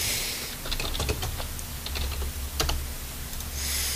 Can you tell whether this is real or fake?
real